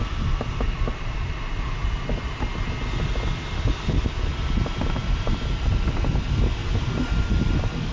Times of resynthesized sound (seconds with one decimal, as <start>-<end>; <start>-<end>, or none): 0.0-6.6; 7.2-7.9